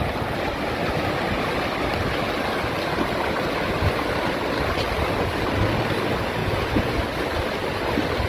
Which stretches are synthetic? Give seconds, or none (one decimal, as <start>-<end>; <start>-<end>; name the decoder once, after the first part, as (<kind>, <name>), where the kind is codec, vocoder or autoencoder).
6.4-6.9 (vocoder, Vocos)